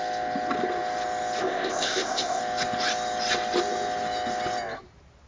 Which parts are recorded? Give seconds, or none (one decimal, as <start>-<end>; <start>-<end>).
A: 0.0-1.4; 2.4-5.3